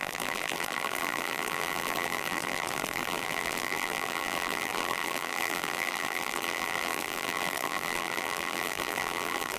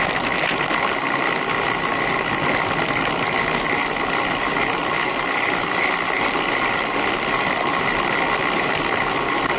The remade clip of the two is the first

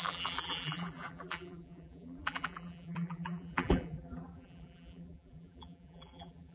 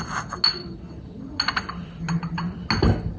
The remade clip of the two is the first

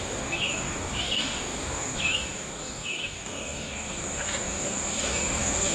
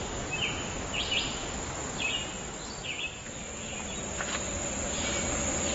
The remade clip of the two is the first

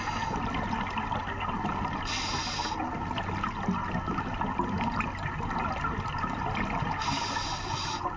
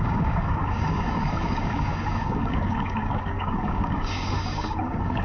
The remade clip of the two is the second